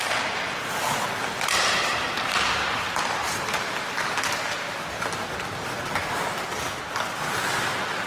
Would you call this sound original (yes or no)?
yes